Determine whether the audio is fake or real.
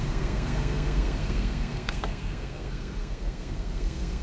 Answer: fake